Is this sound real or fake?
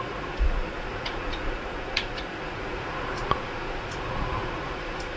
fake